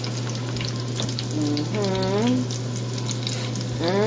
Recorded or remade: recorded